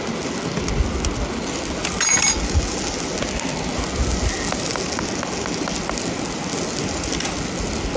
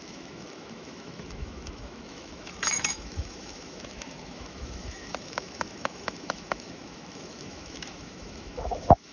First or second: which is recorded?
first